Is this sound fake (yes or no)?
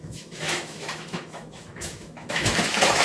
yes